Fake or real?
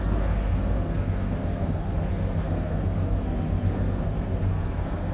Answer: fake